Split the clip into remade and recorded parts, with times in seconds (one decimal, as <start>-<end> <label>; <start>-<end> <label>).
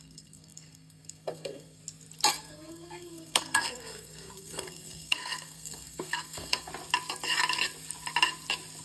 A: 0.0-1.8 remade; 1.8-2.3 recorded; 2.3-6.7 remade; 6.7-8.8 recorded